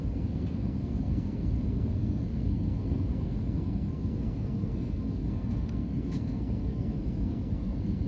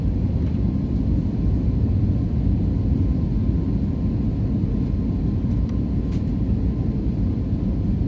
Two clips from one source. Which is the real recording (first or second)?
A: second